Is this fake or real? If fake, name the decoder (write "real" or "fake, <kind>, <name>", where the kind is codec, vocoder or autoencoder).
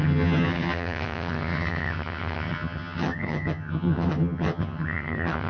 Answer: fake, vocoder, HiFi-GAN